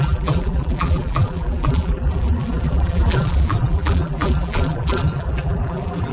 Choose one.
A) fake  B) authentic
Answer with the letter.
A